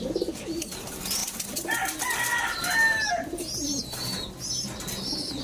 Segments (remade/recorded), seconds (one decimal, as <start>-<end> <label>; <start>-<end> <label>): 0.0-5.4 recorded

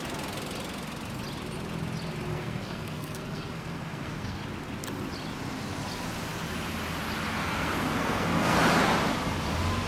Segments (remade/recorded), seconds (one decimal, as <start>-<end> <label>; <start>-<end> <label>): 0.0-2.3 recorded; 2.3-4.4 remade; 4.4-7.4 recorded; 7.4-8.6 remade; 8.6-9.9 recorded